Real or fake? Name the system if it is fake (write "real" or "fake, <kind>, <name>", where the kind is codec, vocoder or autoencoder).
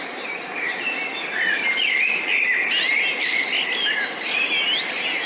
real